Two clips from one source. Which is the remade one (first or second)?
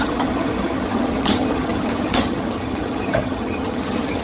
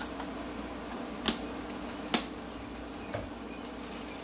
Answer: first